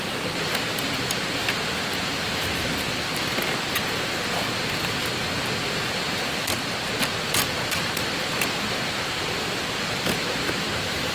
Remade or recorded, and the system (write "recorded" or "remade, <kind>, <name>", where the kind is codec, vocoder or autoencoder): recorded